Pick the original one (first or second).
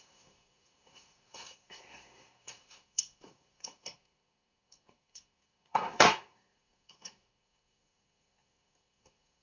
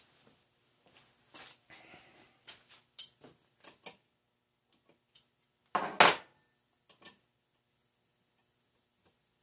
second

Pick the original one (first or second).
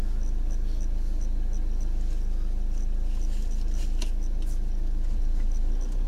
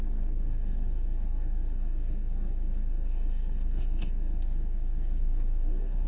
first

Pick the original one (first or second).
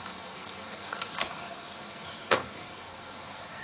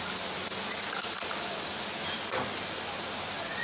second